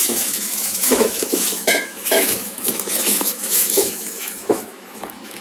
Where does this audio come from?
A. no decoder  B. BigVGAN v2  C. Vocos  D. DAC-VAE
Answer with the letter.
D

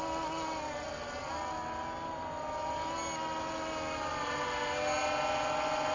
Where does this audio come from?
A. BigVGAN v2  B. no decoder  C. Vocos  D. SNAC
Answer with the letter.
B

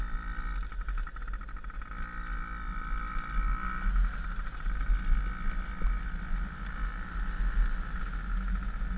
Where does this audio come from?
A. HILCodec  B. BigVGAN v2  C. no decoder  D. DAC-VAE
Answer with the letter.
C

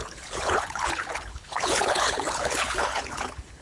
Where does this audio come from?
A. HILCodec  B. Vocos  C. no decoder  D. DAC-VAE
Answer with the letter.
A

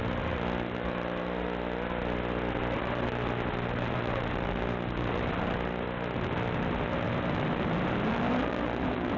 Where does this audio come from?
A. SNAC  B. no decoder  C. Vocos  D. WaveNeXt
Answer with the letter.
B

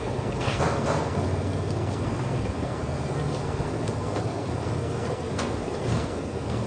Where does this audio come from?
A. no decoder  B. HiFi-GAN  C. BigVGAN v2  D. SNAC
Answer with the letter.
D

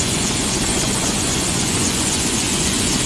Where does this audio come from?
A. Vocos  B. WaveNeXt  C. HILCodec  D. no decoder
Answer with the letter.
A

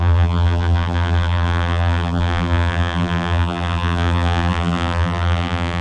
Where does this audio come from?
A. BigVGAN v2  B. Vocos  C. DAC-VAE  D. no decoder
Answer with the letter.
A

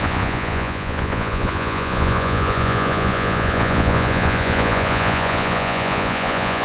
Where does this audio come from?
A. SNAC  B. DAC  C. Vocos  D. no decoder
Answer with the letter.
C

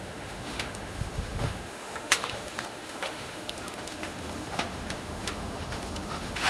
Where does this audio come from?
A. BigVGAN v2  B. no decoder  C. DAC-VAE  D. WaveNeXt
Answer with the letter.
C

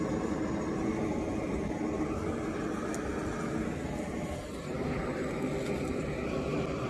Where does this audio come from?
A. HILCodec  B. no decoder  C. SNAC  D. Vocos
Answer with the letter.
B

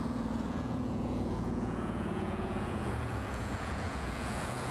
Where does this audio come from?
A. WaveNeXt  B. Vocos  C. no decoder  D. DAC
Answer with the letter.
B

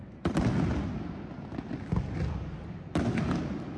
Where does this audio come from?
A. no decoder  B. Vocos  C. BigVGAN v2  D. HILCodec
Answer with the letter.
A